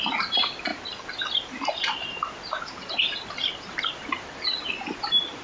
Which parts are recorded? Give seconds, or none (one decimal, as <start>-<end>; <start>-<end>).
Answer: 0.0-5.4